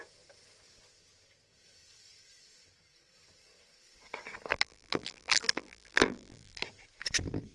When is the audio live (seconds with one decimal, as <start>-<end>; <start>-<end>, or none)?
0.0-4.5; 6.6-7.5